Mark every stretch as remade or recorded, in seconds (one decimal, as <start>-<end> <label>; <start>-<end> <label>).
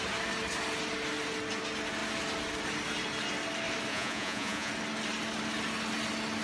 0.0-3.9 recorded; 3.9-4.7 remade; 4.7-6.4 recorded